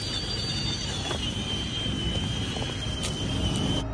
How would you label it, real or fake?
real